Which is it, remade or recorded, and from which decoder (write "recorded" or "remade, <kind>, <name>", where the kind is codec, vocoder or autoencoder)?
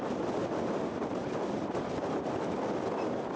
recorded